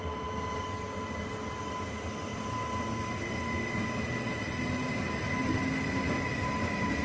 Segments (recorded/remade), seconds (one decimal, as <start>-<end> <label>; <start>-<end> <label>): 0.0-7.0 recorded

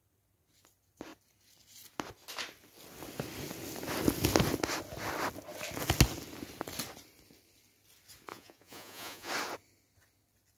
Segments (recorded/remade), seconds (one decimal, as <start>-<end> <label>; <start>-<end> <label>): 0.0-8.3 recorded; 8.3-9.3 remade; 9.3-10.6 recorded

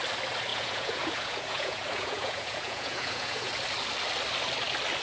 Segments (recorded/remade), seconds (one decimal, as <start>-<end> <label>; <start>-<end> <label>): 0.0-0.5 recorded; 0.5-3.5 remade; 3.5-5.0 recorded

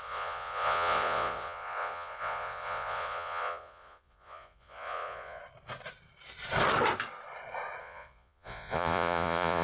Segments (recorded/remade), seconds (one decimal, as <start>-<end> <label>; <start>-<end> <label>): 0.0-5.4 remade; 5.4-7.8 recorded; 7.8-9.6 remade

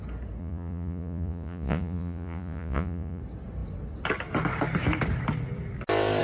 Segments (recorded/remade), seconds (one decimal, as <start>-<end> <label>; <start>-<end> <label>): 0.0-0.4 recorded; 0.4-3.2 remade; 3.2-6.2 recorded

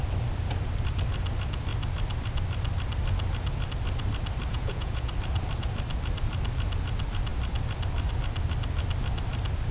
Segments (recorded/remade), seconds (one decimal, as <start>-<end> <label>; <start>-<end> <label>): 0.0-4.5 recorded; 4.5-5.1 remade; 5.1-9.7 recorded